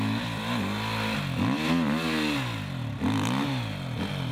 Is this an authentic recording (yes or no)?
yes